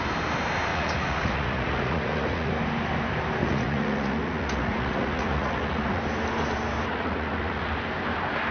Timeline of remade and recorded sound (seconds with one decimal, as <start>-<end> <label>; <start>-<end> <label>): 0.0-0.7 recorded; 0.7-2.5 remade; 2.5-3.4 recorded; 3.4-6.0 remade; 6.0-6.9 recorded; 6.9-7.7 remade; 7.7-8.5 recorded